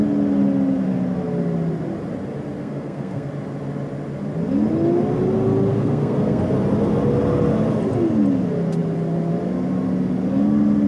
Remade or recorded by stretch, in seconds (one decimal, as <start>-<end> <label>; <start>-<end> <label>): 0.0-2.6 recorded; 2.6-3.3 remade; 3.3-5.7 recorded; 5.7-6.4 remade; 6.4-10.9 recorded